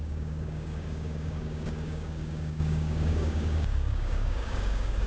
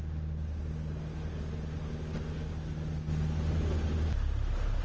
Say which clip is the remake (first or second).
first